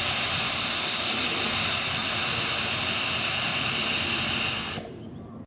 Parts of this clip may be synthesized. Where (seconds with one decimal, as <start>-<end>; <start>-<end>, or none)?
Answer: none